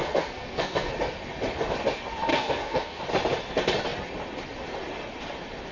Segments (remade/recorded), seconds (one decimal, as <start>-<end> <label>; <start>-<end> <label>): 0.0-0.9 remade; 0.9-2.3 recorded; 2.3-3.0 remade; 3.0-5.7 recorded